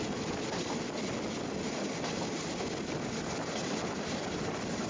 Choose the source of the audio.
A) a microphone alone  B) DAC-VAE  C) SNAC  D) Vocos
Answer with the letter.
A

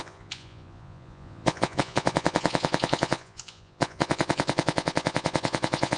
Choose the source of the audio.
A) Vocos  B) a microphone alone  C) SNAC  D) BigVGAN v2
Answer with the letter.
A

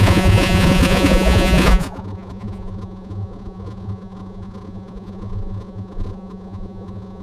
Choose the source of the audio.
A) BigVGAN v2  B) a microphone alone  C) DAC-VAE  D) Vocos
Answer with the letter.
D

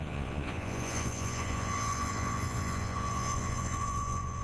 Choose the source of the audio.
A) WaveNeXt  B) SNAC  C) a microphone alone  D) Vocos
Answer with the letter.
D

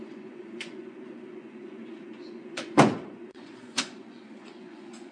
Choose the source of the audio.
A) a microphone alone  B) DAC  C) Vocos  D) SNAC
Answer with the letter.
C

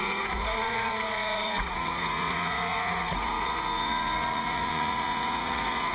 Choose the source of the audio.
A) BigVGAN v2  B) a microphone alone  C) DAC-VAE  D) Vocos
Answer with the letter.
D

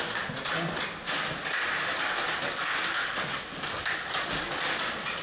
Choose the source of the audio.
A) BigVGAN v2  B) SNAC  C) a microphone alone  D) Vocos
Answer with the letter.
C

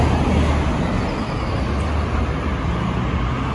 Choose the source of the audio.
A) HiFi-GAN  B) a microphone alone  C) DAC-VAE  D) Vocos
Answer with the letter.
B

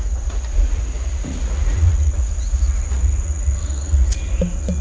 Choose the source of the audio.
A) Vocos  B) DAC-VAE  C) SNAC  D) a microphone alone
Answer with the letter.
A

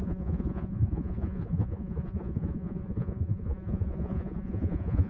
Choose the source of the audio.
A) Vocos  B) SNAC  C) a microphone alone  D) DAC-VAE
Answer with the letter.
A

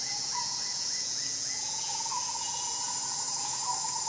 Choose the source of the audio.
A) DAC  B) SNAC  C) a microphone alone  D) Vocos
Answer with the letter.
D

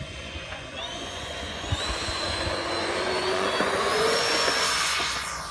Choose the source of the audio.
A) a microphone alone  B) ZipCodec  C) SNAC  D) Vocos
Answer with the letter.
D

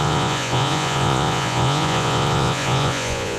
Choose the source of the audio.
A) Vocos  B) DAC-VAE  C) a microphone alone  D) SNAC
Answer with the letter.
A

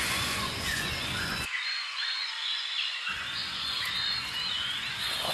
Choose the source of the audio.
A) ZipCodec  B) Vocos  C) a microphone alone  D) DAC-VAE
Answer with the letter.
B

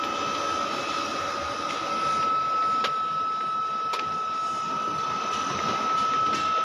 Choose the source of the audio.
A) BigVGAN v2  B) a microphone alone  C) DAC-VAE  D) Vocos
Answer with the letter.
B